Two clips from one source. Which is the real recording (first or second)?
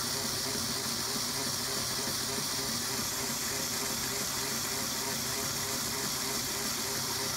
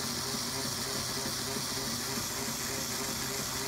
second